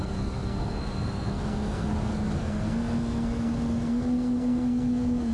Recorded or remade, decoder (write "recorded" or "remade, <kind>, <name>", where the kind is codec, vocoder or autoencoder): remade, codec, SNAC